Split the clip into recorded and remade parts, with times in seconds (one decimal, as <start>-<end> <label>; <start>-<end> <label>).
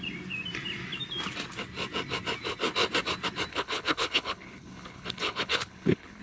0.0-3.5 recorded; 3.5-6.2 remade